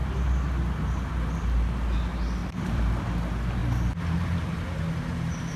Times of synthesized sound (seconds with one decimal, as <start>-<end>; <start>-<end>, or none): 2.4-3.0; 3.6-4.8